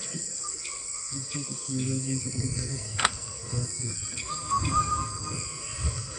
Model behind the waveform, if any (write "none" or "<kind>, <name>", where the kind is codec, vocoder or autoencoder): codec, SNAC